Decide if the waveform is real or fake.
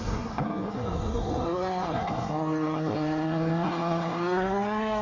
fake